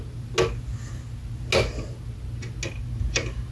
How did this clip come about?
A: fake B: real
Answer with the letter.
B